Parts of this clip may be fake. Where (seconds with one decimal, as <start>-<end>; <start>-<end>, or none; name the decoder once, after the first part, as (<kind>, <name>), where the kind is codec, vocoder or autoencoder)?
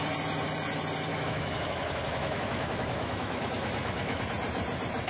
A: 1.1-4.2 (autoencoder, DAC-VAE)